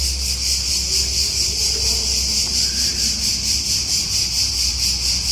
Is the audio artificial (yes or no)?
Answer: no